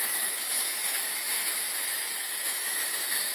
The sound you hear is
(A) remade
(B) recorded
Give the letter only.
A